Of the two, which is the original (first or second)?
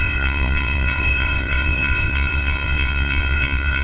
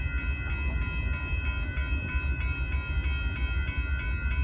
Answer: second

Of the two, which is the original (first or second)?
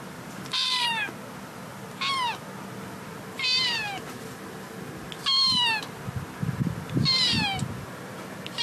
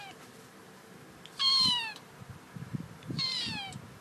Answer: first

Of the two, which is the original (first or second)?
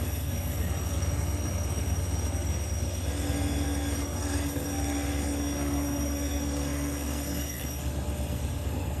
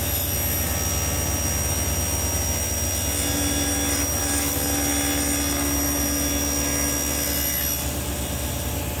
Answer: second